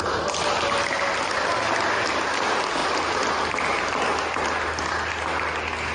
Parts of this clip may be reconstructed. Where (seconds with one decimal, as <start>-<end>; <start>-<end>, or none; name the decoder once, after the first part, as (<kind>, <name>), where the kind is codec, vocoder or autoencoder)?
none